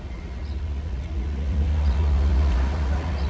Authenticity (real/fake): fake